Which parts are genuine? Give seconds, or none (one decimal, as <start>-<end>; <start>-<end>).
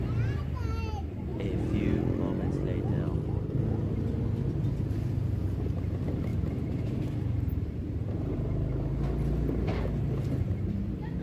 0.0-1.3; 2.5-6.3